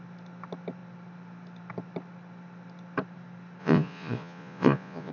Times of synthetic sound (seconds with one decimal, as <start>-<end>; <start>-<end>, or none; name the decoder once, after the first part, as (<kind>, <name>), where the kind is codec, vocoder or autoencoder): 3.6-5.1 (vocoder, Vocos)